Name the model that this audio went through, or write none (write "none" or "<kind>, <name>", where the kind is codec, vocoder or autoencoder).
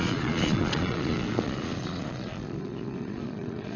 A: vocoder, Vocos